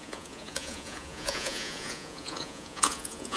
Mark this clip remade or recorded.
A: remade